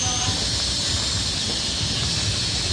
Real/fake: real